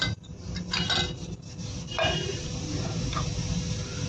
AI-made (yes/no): no